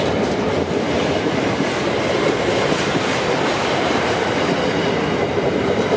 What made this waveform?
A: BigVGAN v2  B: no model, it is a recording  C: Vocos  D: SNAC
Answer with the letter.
A